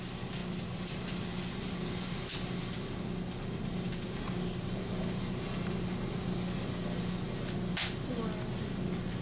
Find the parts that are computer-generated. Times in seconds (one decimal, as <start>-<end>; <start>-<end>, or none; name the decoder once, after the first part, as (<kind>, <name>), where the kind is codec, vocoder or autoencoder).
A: none